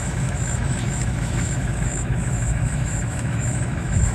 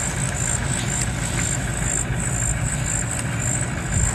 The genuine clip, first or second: second